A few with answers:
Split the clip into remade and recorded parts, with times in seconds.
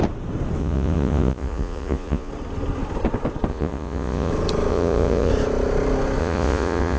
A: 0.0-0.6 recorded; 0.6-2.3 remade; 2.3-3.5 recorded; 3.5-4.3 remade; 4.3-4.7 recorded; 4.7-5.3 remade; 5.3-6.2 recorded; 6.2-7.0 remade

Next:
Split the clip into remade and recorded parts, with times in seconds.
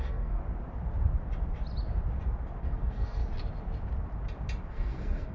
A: 0.0-0.4 remade; 0.4-2.6 recorded; 2.6-3.2 remade; 3.2-4.7 recorded; 4.7-5.3 remade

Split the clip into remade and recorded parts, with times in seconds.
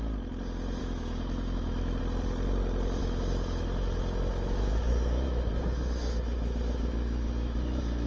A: 0.0-0.8 recorded; 0.8-2.0 remade; 2.0-3.0 recorded; 3.0-8.1 remade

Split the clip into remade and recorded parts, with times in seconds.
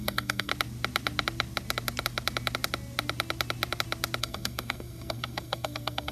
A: 0.0-0.5 remade; 0.5-4.2 recorded; 4.2-6.1 remade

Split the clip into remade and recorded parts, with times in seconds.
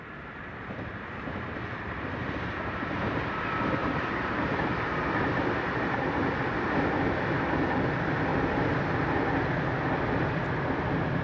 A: 0.0-3.8 recorded; 3.8-4.5 remade; 4.5-8.3 recorded; 8.3-9.2 remade; 9.2-11.2 recorded